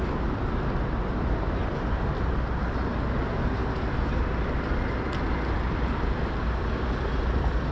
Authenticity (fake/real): real